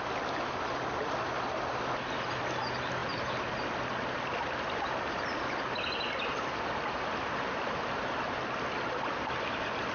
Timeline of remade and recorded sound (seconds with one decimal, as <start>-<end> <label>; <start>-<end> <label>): 0.0-9.9 recorded